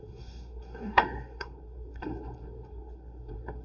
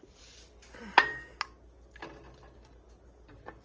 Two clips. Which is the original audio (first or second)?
second